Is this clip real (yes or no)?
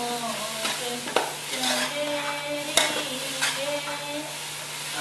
yes